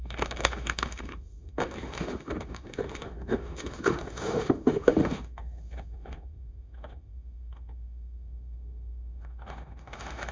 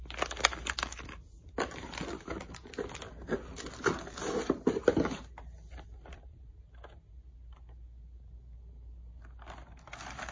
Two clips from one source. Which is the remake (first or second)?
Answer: first